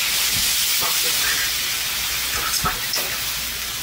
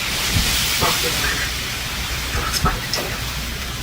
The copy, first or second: second